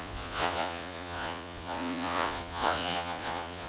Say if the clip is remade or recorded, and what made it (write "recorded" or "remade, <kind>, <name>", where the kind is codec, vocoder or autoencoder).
remade, vocoder, Vocos